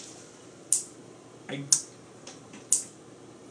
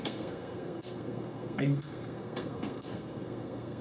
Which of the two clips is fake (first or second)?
second